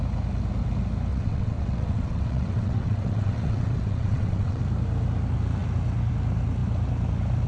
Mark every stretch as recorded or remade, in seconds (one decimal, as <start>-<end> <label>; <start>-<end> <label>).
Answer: 0.0-1.1 recorded; 1.1-4.6 remade; 4.6-7.5 recorded